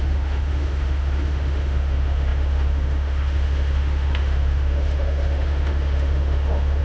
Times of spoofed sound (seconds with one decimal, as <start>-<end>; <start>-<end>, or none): 0.0-6.8